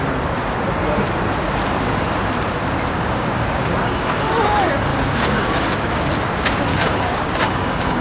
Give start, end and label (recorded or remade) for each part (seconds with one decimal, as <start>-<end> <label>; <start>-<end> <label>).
0.0-2.9 recorded; 2.9-4.2 remade; 4.2-4.9 recorded; 4.9-6.1 remade; 6.1-6.7 recorded; 6.7-8.0 remade